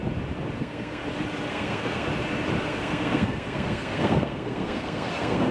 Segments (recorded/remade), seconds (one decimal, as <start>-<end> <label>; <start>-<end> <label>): 0.0-0.6 recorded; 0.6-1.0 remade; 1.0-1.5 recorded; 1.5-2.1 remade; 2.1-2.6 recorded; 2.6-5.5 remade